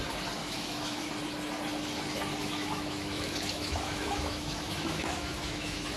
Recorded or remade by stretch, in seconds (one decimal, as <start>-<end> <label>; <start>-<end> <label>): 0.0-0.4 recorded; 0.4-1.1 remade; 1.1-2.4 recorded; 2.4-6.0 remade